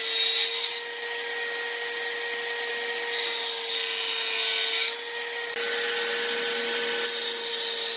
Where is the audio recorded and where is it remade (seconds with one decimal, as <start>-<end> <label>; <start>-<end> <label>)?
0.0-8.0 recorded